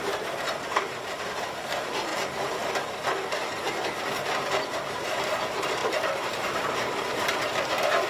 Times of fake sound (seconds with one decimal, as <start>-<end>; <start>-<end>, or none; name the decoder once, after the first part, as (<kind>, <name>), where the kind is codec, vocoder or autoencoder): 0.0-3.6 (vocoder, BigVGAN v2); 4.4-8.1